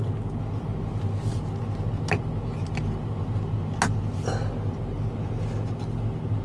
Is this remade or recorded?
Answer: recorded